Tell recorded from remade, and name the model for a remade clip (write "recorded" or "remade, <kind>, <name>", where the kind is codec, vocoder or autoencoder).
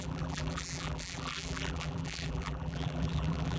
remade, vocoder, BigVGAN v2